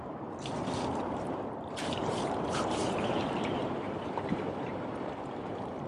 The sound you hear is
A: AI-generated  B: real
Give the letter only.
A